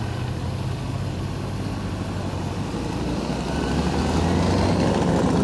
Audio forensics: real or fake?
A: real